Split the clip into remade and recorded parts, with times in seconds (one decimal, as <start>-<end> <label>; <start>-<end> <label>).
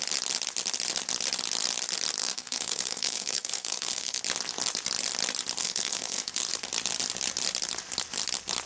0.0-2.2 recorded; 2.2-4.2 remade; 4.2-5.6 recorded; 5.6-6.4 remade; 6.4-8.7 recorded